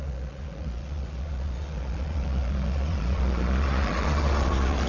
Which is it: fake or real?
fake